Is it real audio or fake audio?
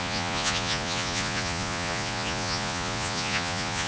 fake